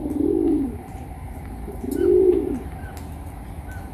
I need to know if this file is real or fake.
real